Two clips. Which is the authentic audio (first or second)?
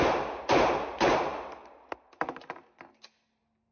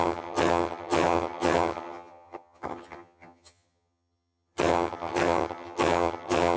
first